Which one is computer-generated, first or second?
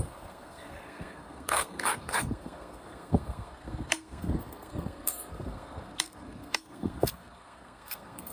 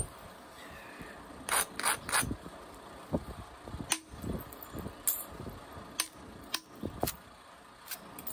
first